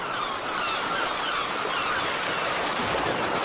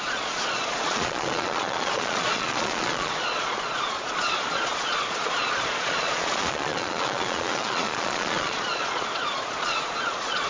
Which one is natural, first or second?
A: first